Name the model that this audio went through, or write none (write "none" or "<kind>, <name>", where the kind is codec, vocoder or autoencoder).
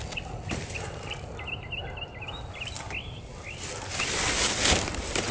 none